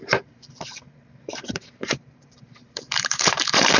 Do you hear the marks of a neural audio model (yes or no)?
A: yes